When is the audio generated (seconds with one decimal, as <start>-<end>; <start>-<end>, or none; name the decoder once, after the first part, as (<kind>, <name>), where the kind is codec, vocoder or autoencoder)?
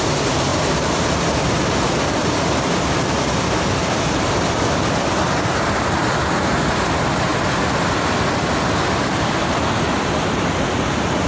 none